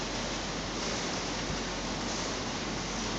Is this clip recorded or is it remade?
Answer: recorded